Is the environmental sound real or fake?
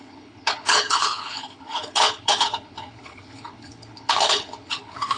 fake